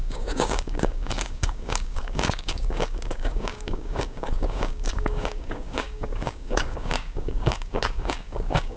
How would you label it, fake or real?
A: fake